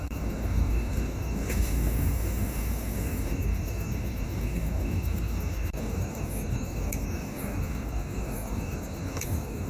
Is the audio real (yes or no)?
no